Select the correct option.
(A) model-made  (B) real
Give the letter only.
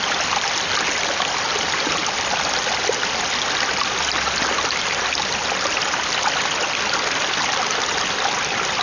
B